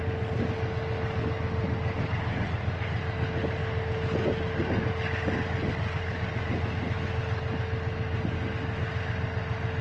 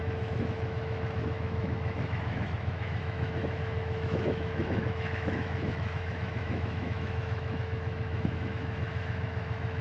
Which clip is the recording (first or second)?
first